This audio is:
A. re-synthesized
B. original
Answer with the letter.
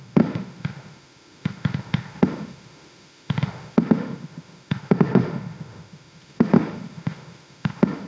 A